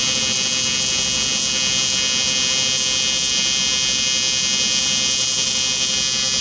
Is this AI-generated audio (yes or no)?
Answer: no